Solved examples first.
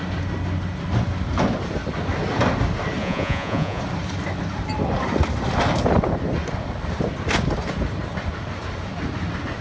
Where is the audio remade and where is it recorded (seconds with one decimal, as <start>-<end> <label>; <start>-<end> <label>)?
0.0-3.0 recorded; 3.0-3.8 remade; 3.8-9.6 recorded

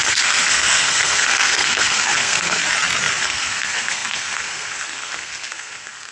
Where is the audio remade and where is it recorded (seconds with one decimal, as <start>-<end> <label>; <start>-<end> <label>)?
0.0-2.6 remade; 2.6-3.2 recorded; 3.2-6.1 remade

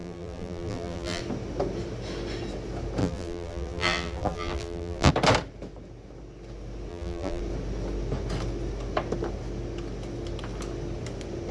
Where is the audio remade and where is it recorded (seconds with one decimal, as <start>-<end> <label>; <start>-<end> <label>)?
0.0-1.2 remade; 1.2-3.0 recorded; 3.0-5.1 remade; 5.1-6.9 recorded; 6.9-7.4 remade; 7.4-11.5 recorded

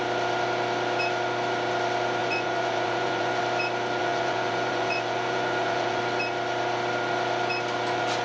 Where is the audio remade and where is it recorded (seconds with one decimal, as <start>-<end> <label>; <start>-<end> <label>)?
0.0-2.2 recorded; 2.2-3.4 remade; 3.4-4.0 recorded; 4.0-6.0 remade; 6.0-8.2 recorded